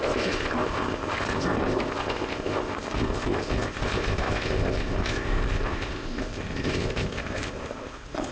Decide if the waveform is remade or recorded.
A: remade